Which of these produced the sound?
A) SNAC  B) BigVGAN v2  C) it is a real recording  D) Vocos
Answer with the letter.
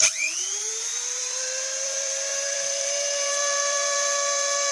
B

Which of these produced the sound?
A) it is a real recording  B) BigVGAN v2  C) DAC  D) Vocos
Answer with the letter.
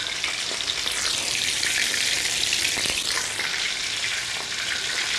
B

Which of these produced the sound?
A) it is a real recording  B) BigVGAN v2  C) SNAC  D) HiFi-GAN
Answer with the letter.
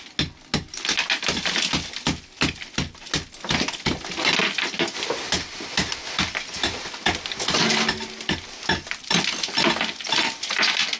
A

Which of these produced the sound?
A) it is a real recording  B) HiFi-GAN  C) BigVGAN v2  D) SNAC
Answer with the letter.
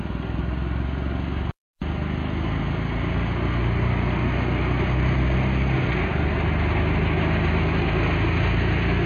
A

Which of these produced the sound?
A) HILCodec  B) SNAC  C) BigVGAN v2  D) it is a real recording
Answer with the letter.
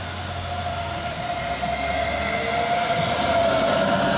D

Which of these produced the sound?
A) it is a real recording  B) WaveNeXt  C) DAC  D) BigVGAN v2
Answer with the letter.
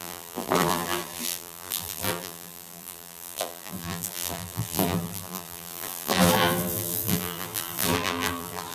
D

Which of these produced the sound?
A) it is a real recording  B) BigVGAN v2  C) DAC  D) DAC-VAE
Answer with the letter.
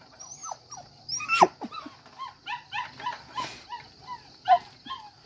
A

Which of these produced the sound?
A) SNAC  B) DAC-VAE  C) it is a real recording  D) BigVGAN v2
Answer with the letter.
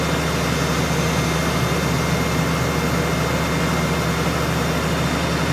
C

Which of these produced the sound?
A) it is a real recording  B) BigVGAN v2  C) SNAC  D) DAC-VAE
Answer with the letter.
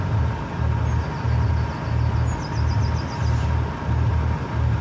A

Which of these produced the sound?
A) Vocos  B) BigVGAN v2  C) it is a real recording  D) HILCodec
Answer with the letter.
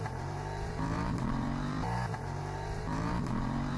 B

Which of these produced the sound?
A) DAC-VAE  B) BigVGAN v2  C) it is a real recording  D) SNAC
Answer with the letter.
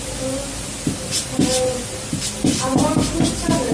B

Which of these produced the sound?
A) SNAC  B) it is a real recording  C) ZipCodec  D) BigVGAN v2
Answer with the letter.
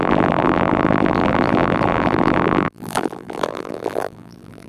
D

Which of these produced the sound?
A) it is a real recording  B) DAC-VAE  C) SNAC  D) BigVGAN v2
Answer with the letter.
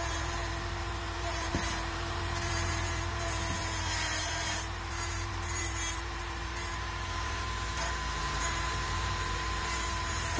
D